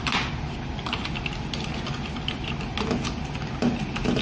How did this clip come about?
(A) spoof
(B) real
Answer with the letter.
B